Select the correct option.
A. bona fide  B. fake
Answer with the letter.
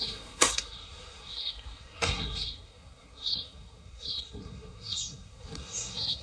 B